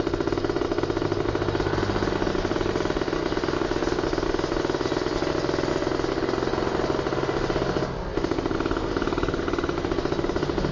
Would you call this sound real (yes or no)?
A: yes